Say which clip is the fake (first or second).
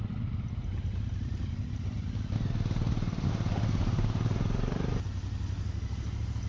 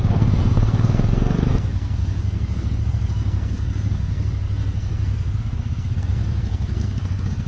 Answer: second